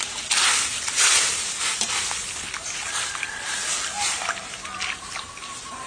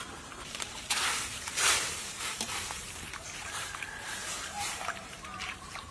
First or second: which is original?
first